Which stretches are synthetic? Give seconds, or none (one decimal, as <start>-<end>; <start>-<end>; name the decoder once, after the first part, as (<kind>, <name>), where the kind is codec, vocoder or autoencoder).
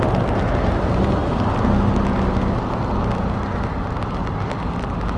none